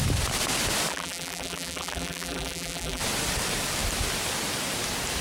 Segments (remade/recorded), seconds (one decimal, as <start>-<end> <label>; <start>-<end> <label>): 0.0-0.9 recorded; 0.9-3.0 remade; 3.0-5.2 recorded